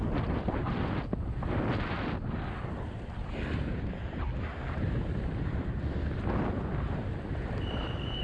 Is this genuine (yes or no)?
yes